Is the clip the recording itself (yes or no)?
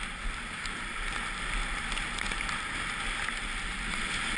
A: yes